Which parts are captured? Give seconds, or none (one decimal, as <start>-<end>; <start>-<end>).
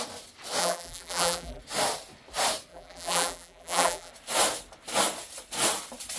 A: 0.0-0.6; 1.6-2.7; 4.1-6.2